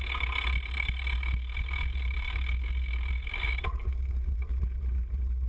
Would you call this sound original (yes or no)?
yes